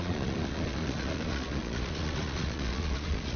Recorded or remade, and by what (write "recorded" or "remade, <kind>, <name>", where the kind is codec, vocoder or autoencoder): remade, vocoder, Vocos